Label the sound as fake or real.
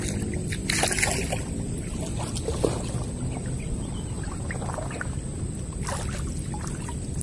real